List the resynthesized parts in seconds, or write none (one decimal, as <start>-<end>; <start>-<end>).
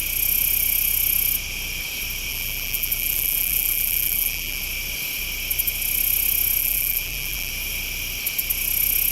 2.3-4.6; 6.6-7.5